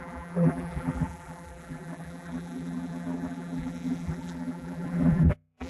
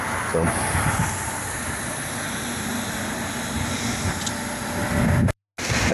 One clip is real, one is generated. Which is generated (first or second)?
first